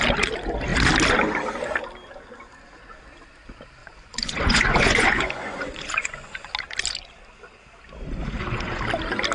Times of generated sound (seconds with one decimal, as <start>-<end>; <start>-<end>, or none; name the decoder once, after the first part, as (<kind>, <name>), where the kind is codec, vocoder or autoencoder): 3.8-6.5 (vocoder, Vocos); 8.2-8.8